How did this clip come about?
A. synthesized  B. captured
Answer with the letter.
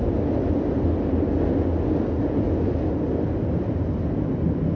B